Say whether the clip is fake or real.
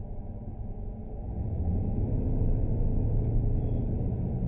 real